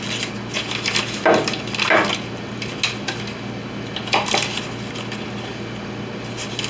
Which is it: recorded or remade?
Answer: recorded